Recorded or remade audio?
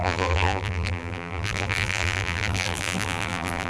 remade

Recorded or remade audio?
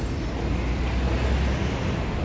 recorded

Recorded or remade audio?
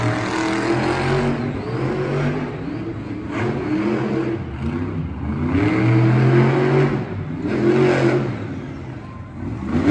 recorded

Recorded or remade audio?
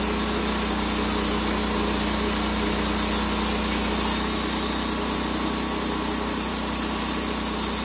recorded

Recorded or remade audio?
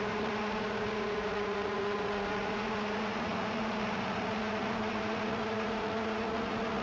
remade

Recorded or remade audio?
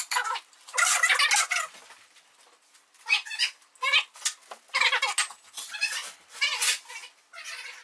recorded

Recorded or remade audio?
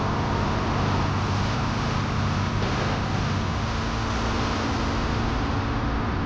recorded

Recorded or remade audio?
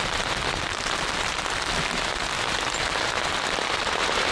recorded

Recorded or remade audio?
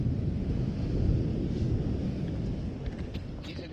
recorded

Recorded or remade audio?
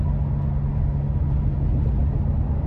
recorded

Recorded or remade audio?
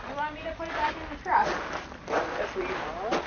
recorded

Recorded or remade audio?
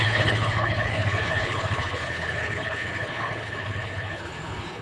remade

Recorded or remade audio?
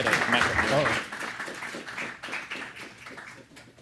recorded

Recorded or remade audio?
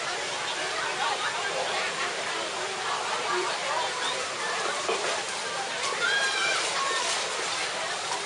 remade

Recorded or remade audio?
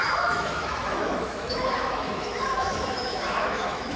remade